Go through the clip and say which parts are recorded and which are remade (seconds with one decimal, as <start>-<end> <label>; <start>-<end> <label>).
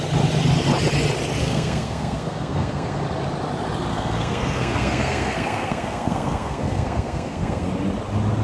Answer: 0.0-1.4 recorded; 1.4-3.0 remade; 3.0-3.9 recorded; 3.9-7.7 remade; 7.7-8.4 recorded